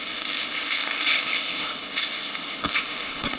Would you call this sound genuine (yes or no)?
no